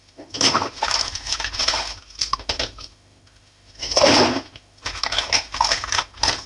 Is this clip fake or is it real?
fake